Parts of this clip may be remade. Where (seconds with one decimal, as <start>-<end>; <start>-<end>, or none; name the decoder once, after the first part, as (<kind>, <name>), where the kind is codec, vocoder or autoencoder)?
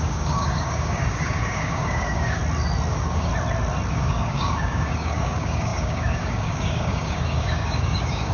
0.0-2.4 (codec, DAC); 2.9-3.3; 3.9-8.3